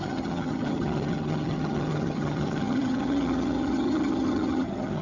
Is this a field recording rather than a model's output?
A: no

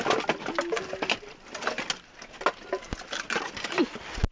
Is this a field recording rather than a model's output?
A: yes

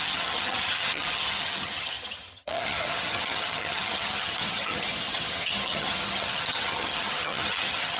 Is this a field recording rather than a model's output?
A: no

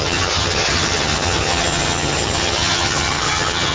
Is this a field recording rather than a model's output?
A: no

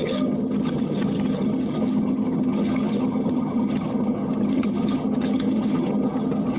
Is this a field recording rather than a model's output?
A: no